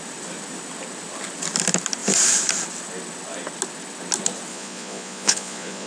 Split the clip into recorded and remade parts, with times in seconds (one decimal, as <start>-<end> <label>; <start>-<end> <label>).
0.0-4.5 recorded; 4.5-5.9 remade